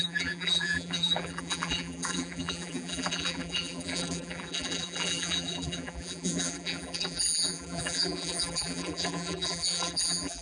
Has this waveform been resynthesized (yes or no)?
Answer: yes